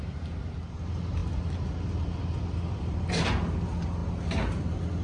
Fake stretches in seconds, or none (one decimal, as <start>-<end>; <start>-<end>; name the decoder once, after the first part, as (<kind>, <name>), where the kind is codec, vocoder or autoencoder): none